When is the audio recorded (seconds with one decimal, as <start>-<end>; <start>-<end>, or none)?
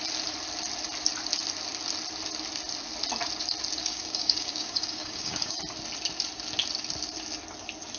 0.0-3.8; 5.6-8.0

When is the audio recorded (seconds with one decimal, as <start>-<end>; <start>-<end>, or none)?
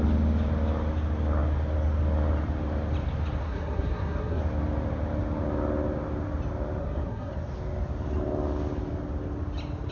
0.0-3.4; 4.4-6.8; 7.3-9.9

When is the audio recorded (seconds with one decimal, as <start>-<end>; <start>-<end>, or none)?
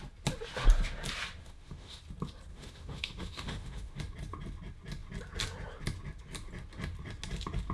0.0-1.4; 2.0-2.5; 4.0-7.7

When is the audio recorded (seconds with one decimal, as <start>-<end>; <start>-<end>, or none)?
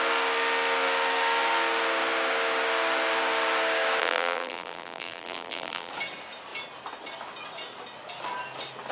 0.0-4.0; 5.9-8.9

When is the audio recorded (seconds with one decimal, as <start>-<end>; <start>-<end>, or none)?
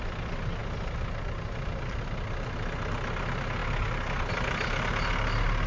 0.0-5.7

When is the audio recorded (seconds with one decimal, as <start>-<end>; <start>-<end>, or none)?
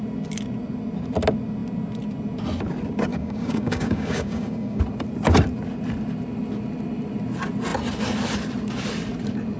0.0-3.1; 4.8-9.6